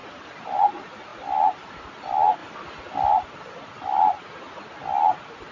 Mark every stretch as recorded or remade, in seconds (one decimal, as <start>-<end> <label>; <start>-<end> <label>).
0.0-0.7 remade; 0.7-1.1 recorded; 1.1-1.7 remade; 1.7-5.5 recorded